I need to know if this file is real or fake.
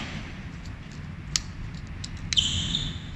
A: real